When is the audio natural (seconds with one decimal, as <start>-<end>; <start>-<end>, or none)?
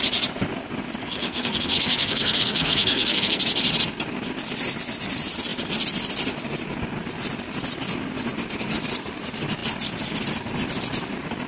0.0-1.0; 3.4-11.5